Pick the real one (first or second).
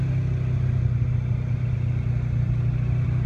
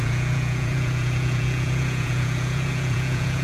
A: first